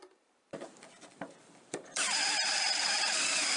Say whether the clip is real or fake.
fake